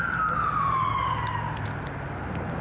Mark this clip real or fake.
real